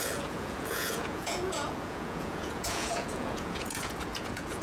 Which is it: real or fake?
fake